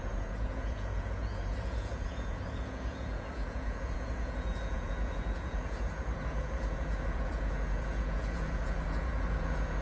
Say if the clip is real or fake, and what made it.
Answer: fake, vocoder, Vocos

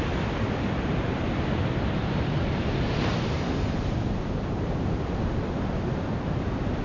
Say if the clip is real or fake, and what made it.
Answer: real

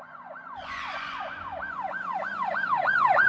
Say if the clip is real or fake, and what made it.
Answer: fake, vocoder, Vocos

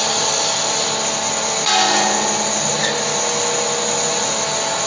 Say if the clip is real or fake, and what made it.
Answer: real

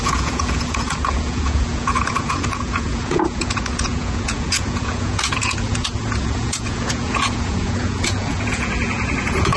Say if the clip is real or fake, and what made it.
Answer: fake, vocoder, Vocos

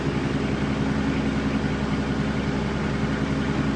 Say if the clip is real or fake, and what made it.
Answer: real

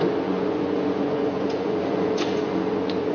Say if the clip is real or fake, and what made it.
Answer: fake, vocoder, Vocos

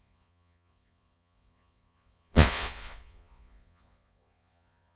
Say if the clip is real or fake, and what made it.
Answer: fake, vocoder, Vocos